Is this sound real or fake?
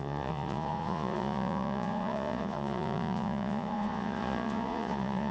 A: fake